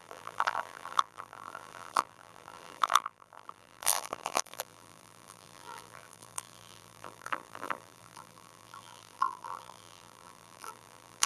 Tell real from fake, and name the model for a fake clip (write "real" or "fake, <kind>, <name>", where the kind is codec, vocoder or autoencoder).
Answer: fake, vocoder, BigVGAN v2